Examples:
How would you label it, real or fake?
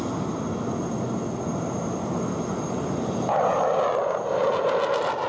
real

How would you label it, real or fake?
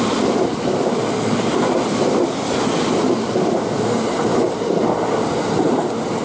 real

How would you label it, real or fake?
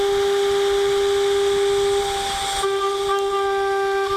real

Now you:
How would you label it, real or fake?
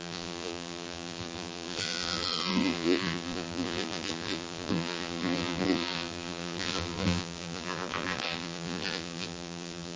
fake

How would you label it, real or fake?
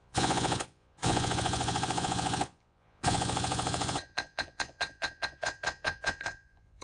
fake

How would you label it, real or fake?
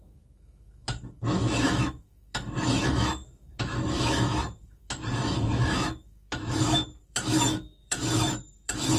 fake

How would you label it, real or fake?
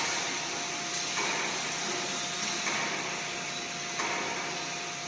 real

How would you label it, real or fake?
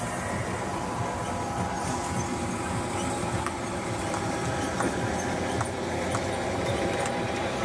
real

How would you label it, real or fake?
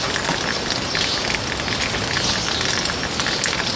real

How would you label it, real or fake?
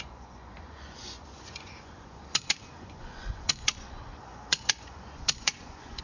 fake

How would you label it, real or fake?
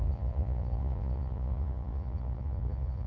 fake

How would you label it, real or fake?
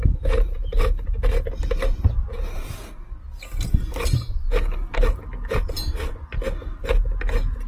real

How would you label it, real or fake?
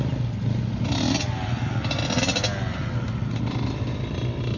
real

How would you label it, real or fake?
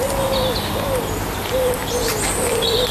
real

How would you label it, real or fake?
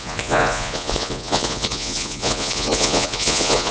fake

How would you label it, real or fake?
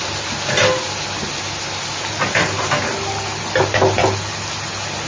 real